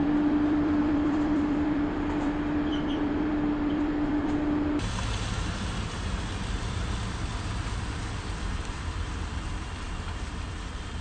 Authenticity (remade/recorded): remade